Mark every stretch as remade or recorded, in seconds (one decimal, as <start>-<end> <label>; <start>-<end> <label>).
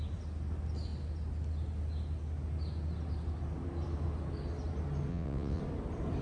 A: 0.0-5.1 recorded; 5.1-5.6 remade; 5.6-6.2 recorded